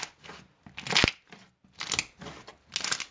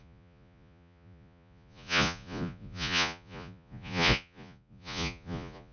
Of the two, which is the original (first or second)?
first